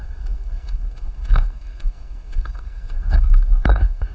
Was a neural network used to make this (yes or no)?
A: yes